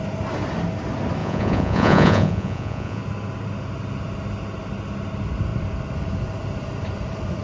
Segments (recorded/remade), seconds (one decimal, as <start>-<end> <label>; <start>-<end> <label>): 0.0-1.2 recorded; 1.2-3.0 remade; 3.0-7.4 recorded